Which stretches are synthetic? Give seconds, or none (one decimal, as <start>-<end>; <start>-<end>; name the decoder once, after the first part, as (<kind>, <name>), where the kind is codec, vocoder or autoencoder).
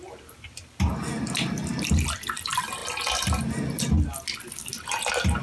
none